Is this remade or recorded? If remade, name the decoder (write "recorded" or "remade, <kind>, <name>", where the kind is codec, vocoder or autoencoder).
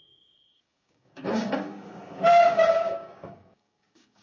remade, codec, DAC